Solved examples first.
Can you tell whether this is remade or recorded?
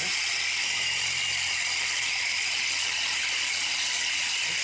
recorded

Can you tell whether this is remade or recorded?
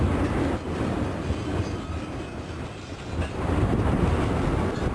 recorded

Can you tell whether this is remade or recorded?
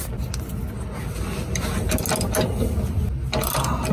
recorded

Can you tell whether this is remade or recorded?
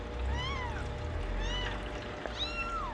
recorded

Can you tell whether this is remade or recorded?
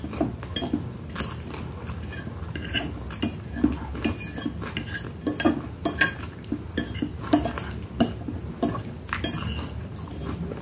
recorded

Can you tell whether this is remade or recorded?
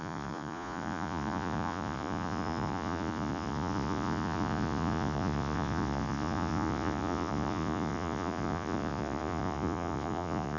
remade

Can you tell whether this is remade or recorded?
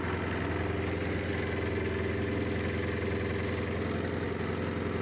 recorded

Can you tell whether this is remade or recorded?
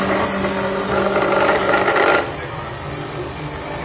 recorded